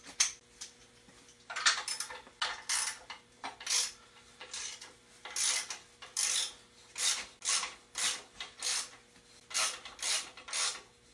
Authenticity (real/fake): real